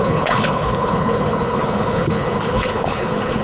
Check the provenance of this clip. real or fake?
fake